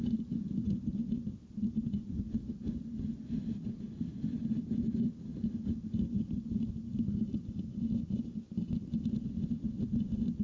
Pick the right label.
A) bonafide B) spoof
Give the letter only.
A